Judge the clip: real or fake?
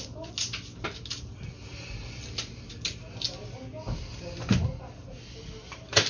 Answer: real